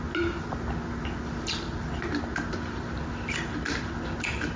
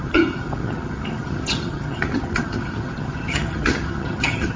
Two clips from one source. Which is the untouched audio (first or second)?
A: first